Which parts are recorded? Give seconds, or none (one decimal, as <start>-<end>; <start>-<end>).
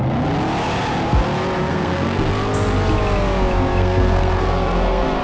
0.0-1.6; 2.3-3.8